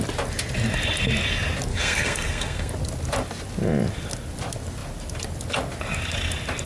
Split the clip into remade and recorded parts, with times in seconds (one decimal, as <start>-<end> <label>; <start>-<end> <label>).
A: 0.0-1.7 recorded; 1.7-2.7 remade; 2.7-6.7 recorded